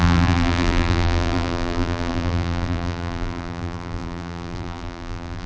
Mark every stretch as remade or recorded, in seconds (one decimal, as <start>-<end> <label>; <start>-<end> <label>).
0.0-5.5 remade